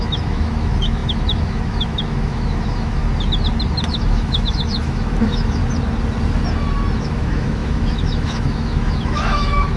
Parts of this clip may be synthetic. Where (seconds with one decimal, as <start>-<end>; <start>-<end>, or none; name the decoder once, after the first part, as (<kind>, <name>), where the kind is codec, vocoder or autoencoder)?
0.0-3.0 (autoencoder, DAC-VAE); 3.9-5.6; 7.0-9.8